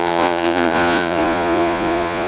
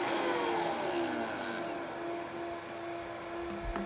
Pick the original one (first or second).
second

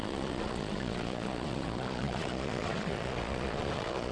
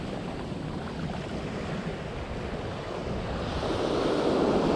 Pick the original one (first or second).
second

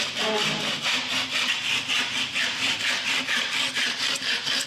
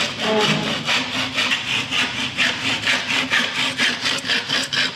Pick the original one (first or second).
second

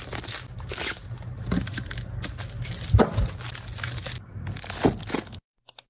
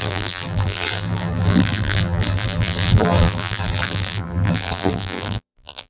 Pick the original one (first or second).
first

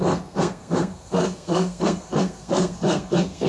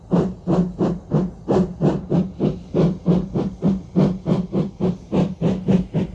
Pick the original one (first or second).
second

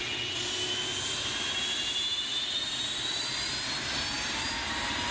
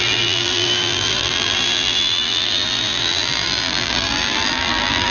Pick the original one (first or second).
first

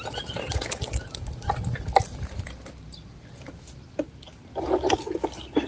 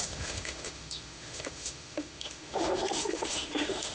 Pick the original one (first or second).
first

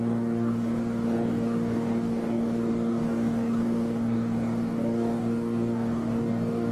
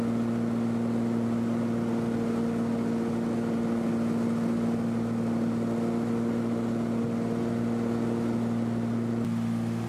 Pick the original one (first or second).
second